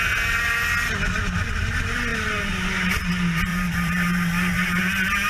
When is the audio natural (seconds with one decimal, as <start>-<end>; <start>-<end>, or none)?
0.0-2.1; 3.1-3.5; 4.8-5.3